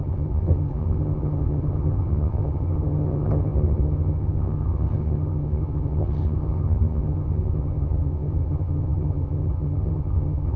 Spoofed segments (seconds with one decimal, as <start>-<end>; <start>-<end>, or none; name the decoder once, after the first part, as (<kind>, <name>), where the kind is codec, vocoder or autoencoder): 0.0-10.6 (vocoder, HiFi-GAN)